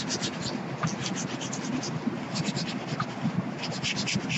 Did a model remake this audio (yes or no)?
no